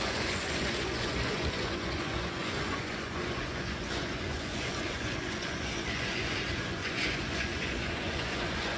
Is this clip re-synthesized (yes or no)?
yes